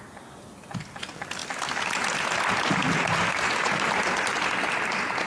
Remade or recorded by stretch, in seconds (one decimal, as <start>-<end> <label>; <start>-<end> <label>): 0.0-5.3 recorded

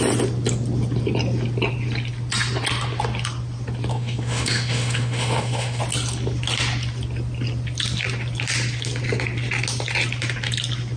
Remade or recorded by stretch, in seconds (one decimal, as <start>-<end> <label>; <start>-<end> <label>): 0.0-3.9 recorded; 3.9-5.8 remade; 5.8-11.0 recorded